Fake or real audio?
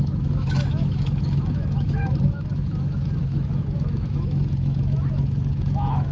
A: fake